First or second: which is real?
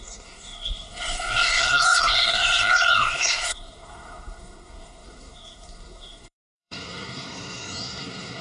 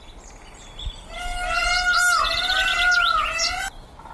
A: second